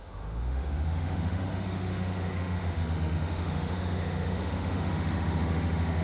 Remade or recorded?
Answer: remade